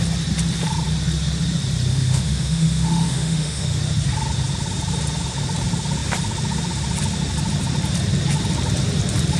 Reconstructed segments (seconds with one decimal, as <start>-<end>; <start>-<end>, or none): 1.9-3.8